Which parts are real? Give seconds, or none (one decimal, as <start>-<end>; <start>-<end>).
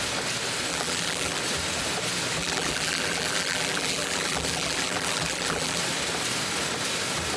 0.0-0.7; 1.4-2.4; 5.8-7.4